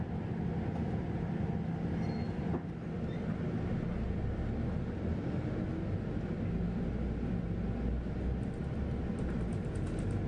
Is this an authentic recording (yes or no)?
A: yes